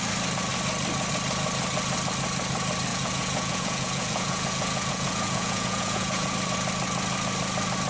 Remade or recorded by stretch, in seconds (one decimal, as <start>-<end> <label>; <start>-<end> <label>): 0.0-2.9 recorded; 2.9-6.3 remade; 6.3-7.9 recorded